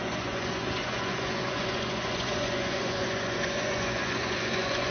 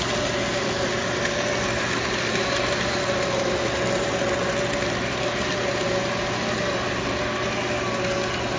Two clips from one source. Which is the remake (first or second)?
first